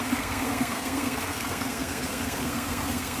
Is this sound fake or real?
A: fake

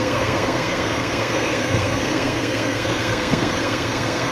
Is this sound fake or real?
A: fake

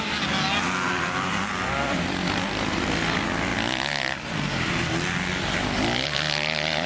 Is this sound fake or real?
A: real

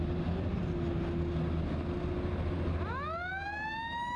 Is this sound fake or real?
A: real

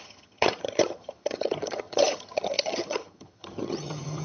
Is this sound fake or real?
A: fake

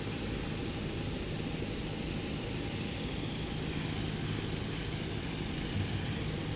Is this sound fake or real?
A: real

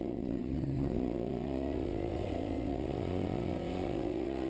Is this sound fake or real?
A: fake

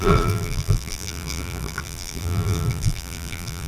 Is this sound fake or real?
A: fake